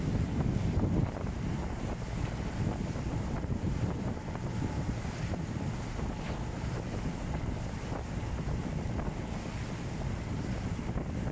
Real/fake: real